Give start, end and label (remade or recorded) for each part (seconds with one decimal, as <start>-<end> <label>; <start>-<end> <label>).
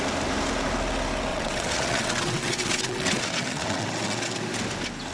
0.0-1.3 recorded; 1.3-4.4 remade; 4.4-5.1 recorded